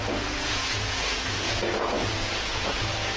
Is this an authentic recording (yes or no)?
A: no